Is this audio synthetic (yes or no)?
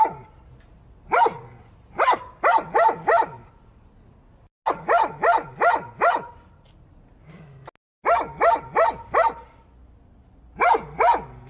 no